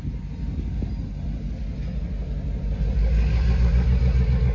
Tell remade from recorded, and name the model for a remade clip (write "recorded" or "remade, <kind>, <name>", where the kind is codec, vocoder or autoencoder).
recorded